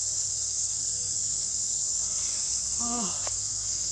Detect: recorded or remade remade